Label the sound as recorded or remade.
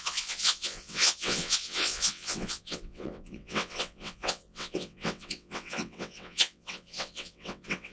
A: remade